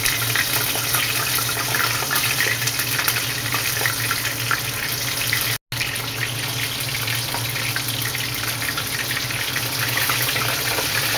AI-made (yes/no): no